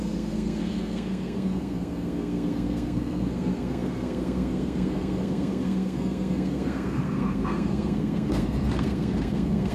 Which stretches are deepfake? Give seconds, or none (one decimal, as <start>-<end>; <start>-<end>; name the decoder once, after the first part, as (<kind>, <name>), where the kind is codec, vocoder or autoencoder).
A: 0.0-9.7 (codec, SNAC)